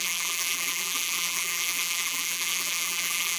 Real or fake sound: fake